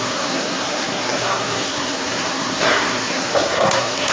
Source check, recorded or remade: remade